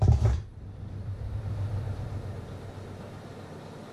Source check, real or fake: fake